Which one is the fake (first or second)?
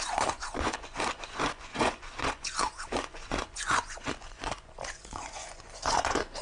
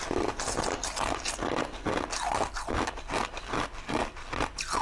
first